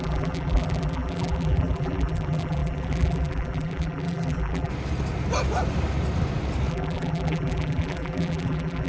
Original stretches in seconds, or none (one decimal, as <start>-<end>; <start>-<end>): 4.7-6.7